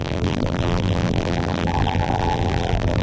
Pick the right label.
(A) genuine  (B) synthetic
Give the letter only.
B